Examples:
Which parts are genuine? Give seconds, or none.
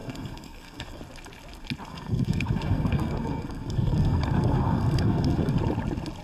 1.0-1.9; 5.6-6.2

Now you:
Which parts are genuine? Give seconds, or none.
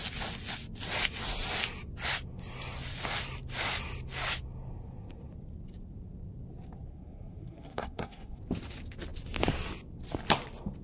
0.0-6.9; 8.4-10.8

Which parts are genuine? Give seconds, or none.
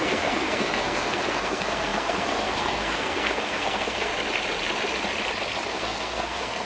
4.1-5.7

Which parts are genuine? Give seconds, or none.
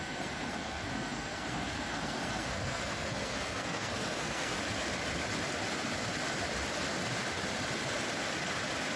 4.5-9.0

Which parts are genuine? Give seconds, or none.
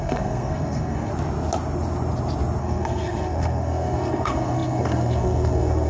1.1-2.6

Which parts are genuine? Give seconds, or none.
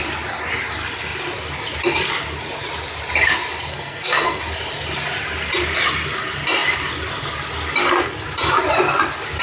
0.0-3.7; 4.4-9.4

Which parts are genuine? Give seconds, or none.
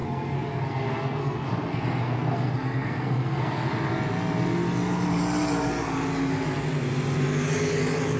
3.7-8.2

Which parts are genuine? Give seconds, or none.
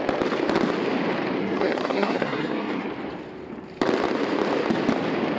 0.0-1.4; 2.9-5.4